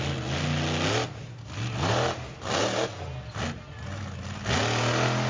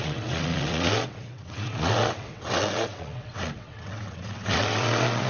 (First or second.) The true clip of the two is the first